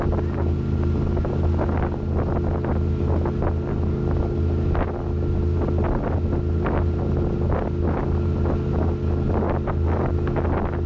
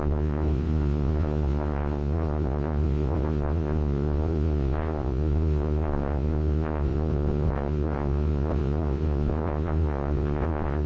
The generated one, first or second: second